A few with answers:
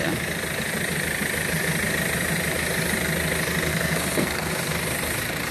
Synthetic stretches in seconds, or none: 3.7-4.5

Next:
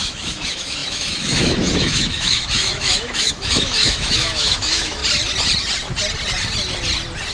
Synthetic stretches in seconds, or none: 0.0-5.0

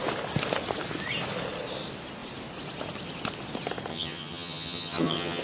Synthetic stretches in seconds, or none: 3.9-5.4